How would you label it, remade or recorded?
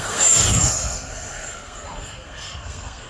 remade